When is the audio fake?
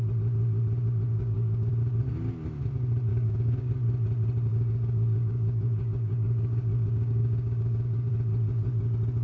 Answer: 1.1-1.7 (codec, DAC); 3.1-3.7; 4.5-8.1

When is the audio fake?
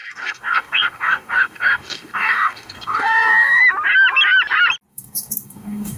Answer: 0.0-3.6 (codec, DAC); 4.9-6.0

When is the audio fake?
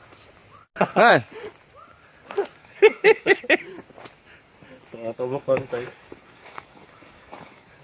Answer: 2.6-3.4 (codec, DAC); 4.9-7.8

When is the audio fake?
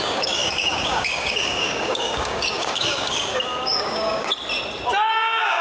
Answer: 0.0-4.3 (codec, DAC); 5.1-5.6